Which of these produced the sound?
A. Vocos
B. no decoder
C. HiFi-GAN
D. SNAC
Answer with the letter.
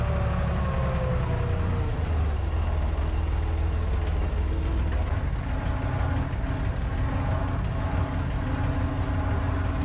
B